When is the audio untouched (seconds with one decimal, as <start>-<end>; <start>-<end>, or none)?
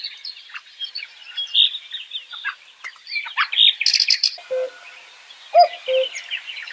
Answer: 0.0-6.7